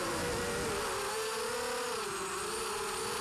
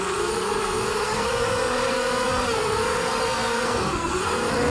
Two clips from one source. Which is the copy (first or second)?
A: second